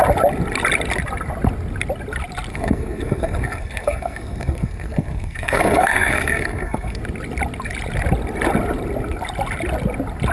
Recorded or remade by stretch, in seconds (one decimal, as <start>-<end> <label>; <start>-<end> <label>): 0.0-2.5 recorded; 2.5-7.0 remade; 7.0-10.3 recorded